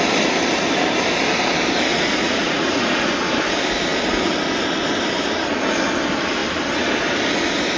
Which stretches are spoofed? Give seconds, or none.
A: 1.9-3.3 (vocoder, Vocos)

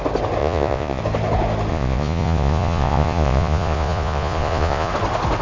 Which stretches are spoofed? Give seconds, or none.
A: 0.4-1.0 (vocoder, Vocos); 1.7-4.9

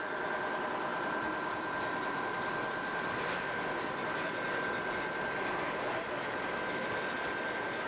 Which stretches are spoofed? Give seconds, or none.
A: none

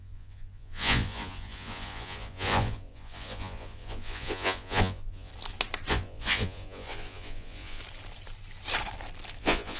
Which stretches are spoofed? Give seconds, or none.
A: 0.0-5.3 (vocoder, Vocos); 5.9-7.8; 9.4-9.8

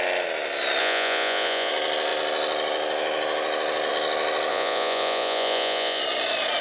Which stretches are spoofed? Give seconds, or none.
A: 0.8-1.7 (vocoder, Vocos); 4.5-6.0